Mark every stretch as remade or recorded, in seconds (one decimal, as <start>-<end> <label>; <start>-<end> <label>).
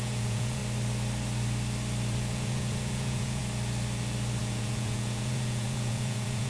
0.0-0.6 remade; 0.6-2.3 recorded; 2.3-3.4 remade; 3.4-4.4 recorded; 4.4-6.5 remade